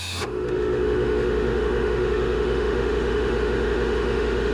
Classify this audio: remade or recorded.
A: remade